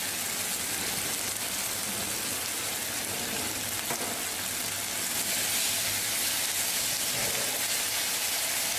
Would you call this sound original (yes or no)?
yes